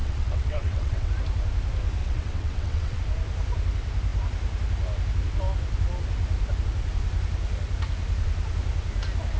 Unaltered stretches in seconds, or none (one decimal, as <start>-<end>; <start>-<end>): 1.1-2.0; 3.0-9.4